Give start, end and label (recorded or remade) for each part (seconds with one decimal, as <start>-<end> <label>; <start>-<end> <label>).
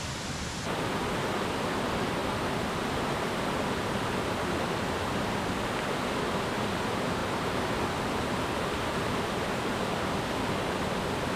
0.0-11.4 recorded